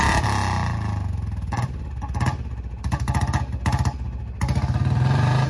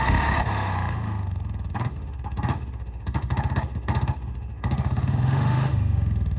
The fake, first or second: second